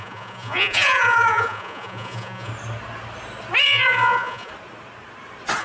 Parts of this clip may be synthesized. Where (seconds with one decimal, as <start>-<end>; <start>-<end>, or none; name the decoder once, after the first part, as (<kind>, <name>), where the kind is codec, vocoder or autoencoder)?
0.0-2.5 (vocoder, Vocos); 3.6-4.5